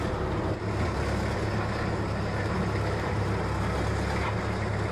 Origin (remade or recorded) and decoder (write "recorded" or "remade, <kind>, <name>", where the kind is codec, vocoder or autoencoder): recorded